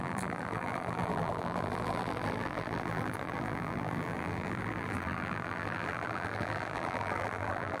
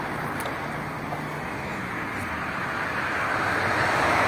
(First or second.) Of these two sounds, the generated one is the first